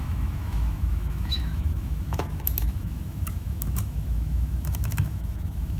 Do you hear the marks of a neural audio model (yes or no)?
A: yes